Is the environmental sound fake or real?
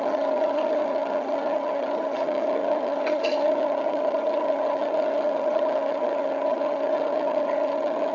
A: fake